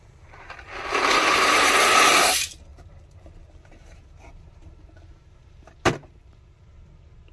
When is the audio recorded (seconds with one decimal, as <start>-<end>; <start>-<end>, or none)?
0.0-2.7; 6.4-7.3